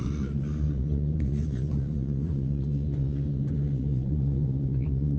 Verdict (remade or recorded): remade